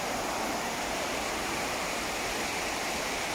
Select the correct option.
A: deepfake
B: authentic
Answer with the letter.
B